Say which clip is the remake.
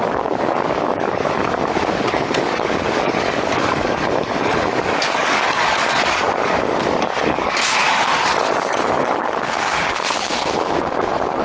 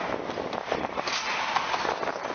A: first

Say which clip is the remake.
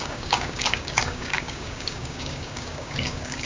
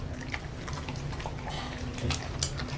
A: first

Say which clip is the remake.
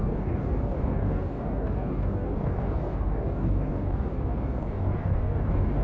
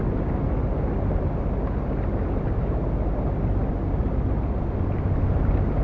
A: first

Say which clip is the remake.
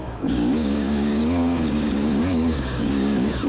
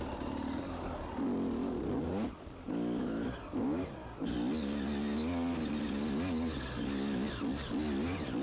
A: first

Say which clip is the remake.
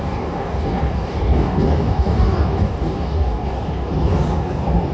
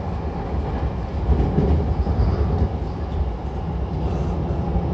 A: first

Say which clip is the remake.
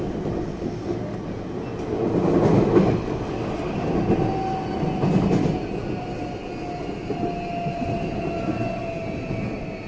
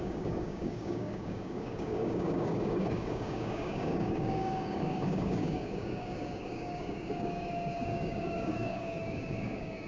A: second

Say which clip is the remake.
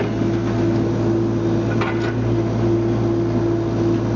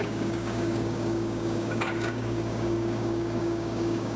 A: second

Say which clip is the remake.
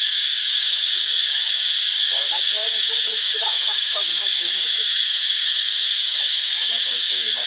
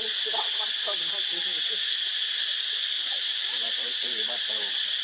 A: first